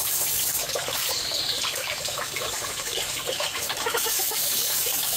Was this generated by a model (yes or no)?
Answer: yes